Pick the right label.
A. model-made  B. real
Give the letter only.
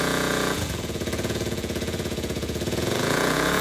A